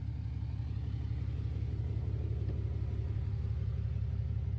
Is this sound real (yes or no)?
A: yes